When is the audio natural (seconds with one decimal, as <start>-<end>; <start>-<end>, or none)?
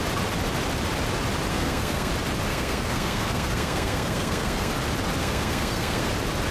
0.0-1.5; 2.1-2.5; 4.7-5.2; 6.1-6.5